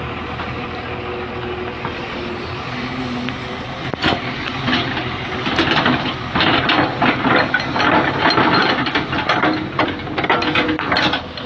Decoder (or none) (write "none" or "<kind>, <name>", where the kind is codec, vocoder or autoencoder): none